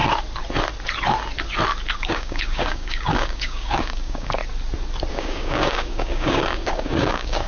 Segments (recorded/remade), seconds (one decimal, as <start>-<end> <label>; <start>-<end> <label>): 0.0-2.0 recorded; 2.0-4.4 remade; 4.4-5.1 recorded; 5.1-7.5 remade